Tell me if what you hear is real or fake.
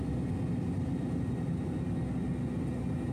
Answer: real